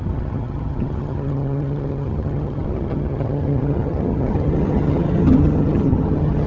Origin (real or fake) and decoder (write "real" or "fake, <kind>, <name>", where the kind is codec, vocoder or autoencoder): fake, vocoder, HiFi-GAN